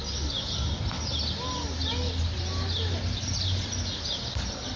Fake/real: real